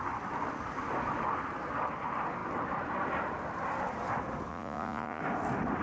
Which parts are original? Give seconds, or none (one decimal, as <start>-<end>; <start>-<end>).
0.0-4.5; 5.2-5.8